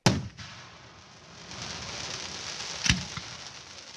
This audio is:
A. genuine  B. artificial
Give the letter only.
A